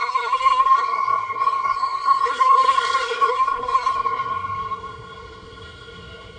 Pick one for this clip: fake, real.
fake